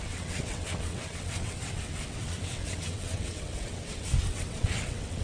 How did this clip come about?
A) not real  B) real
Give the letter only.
A